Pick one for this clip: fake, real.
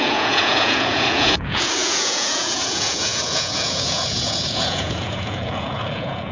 fake